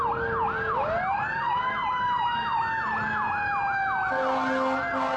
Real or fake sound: real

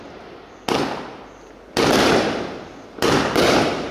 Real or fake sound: real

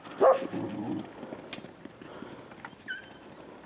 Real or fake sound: real